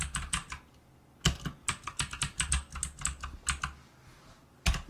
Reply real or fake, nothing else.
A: real